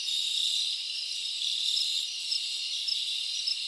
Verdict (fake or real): real